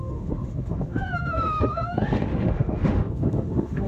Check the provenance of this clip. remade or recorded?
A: remade